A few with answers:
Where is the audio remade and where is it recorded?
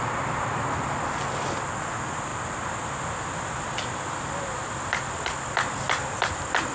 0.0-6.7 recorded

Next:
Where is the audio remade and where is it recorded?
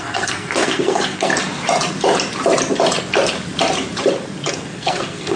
0.0-1.3 remade; 1.3-4.5 recorded; 4.5-5.4 remade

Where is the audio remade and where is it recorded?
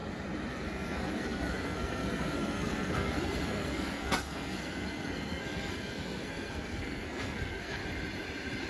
0.0-0.5 recorded; 0.5-7.8 remade; 7.8-8.7 recorded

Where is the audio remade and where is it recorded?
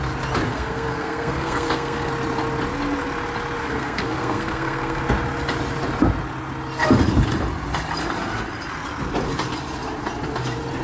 0.0-0.5 recorded; 0.5-2.1 remade; 2.1-3.6 recorded; 3.6-5.0 remade; 5.0-10.8 recorded